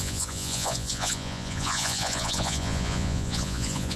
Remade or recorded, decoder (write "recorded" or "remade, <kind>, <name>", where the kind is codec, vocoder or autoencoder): remade, vocoder, Vocos